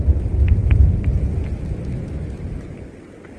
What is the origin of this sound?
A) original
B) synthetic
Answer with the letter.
A